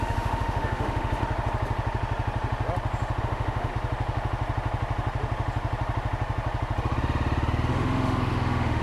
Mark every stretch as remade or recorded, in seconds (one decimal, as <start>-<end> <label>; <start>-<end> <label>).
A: 0.0-1.2 remade; 1.2-3.2 recorded; 3.2-3.7 remade; 3.7-7.7 recorded; 7.7-8.8 remade